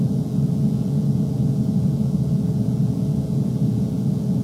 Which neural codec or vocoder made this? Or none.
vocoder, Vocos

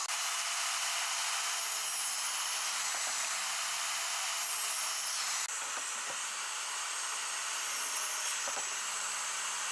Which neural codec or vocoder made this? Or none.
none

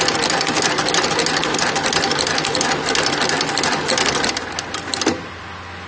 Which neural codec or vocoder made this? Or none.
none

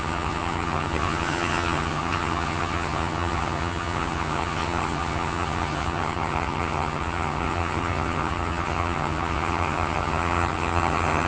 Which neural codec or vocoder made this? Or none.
vocoder, HiFi-GAN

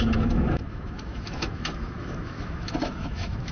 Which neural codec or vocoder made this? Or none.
autoencoder, DAC-VAE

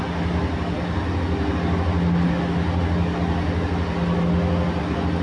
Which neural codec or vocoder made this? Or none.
none